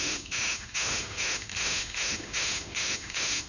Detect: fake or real fake